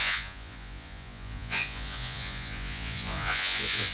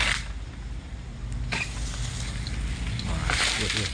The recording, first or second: second